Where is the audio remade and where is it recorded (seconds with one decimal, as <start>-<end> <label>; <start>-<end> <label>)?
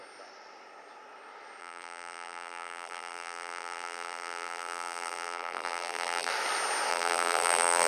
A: 0.0-1.6 recorded; 1.6-6.3 remade; 6.3-6.9 recorded; 6.9-7.9 remade